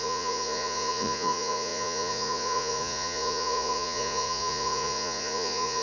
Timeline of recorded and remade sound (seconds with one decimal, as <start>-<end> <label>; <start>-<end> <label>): 0.0-5.8 remade